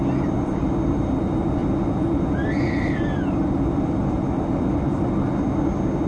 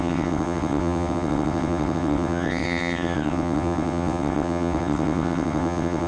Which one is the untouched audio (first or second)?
first